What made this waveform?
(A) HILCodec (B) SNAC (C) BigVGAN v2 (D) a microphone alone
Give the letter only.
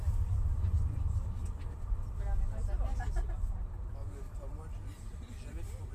D